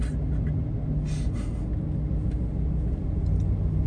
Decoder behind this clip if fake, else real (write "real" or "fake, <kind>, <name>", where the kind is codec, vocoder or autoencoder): real